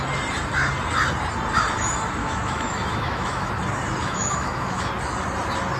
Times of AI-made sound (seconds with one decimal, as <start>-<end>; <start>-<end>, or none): 2.2-3.5; 4.0-4.9